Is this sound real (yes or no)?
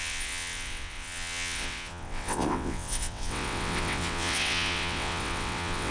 no